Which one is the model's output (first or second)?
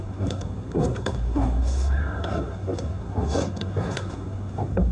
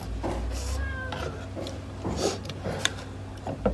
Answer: first